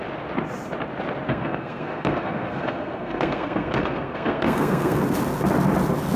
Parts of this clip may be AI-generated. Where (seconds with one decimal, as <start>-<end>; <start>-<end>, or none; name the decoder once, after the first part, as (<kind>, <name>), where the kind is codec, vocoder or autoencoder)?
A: 1.3-5.0 (codec, SNAC)